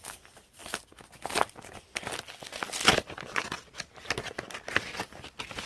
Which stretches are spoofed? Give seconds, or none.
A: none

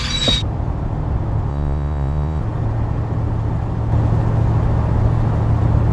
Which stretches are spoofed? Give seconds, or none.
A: 1.5-2.4 (vocoder, Vocos)

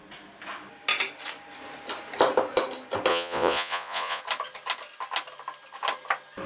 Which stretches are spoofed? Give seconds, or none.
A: 3.1-4.2 (vocoder, Vocos)

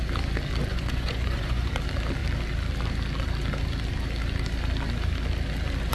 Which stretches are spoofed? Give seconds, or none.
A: 0.7-1.7 (vocoder, Vocos)

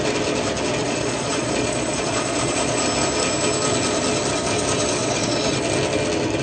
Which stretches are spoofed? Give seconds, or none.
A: 0.8-2.8 (vocoder, Vocos); 5.0-5.6

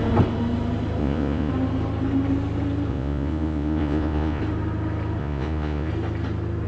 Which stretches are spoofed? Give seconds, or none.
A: 1.0-1.5 (vocoder, Vocos); 2.9-4.4; 5.2-5.9